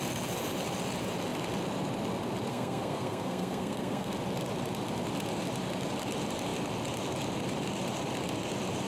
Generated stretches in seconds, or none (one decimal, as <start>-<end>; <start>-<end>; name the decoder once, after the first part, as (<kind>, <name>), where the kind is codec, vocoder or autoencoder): 2.5-4.1 (codec, SNAC)